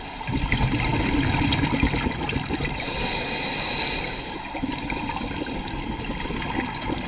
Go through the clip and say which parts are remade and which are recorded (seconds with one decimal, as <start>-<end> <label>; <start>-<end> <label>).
0.0-7.1 recorded